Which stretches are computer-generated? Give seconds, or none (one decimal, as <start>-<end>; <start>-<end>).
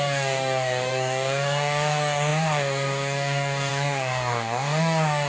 0.0-5.3